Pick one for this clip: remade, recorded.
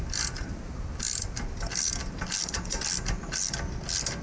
recorded